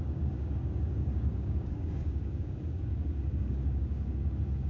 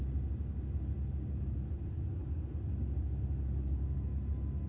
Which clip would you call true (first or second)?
second